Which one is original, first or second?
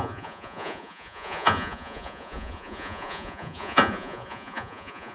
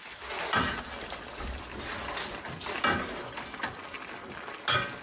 second